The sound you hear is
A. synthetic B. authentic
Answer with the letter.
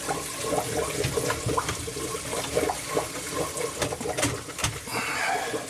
B